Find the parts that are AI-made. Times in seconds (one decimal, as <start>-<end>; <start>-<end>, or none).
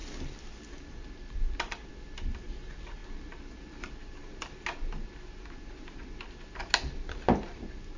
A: none